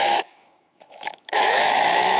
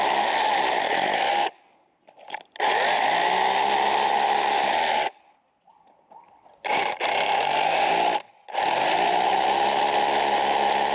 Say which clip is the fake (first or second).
first